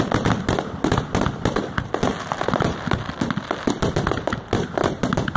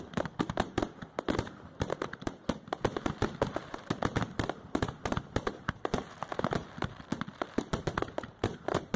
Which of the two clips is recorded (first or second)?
first